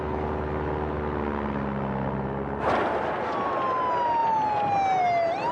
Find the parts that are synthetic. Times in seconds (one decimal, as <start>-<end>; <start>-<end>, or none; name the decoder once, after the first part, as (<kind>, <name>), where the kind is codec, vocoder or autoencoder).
none